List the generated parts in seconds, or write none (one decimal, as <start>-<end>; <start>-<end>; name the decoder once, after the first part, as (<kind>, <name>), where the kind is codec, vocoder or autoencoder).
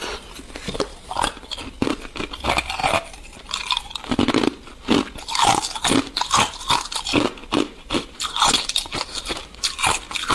8.9-9.8 (vocoder, BigVGAN v2)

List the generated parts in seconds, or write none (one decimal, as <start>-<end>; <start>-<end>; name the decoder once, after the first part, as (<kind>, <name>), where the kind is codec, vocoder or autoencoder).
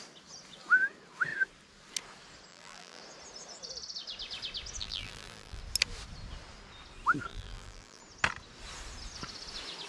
2.5-3.0 (vocoder, BigVGAN v2); 4.8-5.6; 7.3-8.0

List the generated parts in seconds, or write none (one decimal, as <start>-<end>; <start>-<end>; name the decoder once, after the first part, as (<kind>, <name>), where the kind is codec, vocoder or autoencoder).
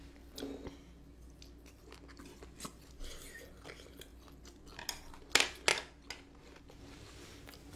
none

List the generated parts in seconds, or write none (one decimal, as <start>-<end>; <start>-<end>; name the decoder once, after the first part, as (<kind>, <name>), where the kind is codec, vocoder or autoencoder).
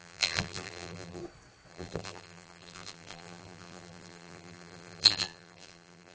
0.0-1.2 (vocoder, BigVGAN v2); 1.7-6.1